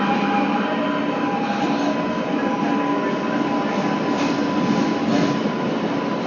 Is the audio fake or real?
real